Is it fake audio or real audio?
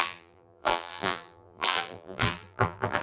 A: fake